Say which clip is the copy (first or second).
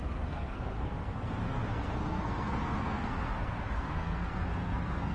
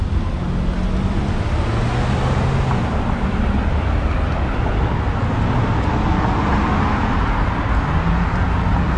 first